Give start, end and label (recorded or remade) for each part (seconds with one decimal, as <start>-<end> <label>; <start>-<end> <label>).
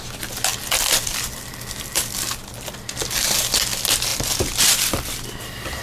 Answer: 0.0-0.5 recorded; 0.5-3.5 remade; 3.5-4.1 recorded; 4.1-5.8 remade